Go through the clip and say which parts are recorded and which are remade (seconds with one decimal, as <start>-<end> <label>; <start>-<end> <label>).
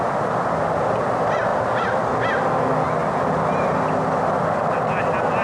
0.0-5.4 recorded